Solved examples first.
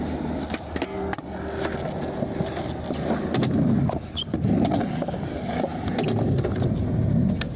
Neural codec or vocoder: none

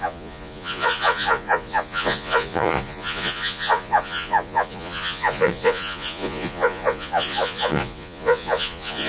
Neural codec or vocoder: vocoder, Vocos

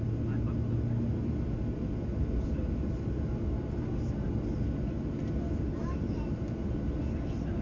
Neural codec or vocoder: none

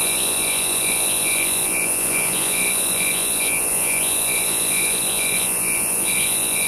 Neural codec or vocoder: vocoder, Vocos